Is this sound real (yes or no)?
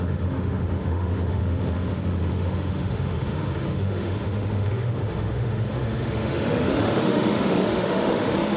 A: no